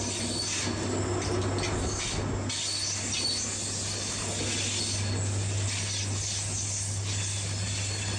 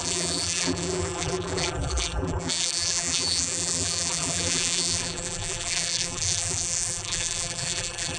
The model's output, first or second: second